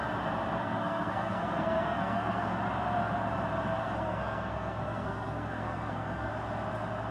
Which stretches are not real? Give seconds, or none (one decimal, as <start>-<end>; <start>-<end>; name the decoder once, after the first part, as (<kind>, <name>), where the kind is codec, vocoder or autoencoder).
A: 0.6-2.6 (codec, SNAC); 3.8-6.3